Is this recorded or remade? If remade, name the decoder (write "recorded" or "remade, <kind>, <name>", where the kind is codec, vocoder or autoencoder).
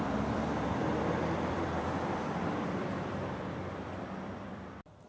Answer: remade, vocoder, BigVGAN v2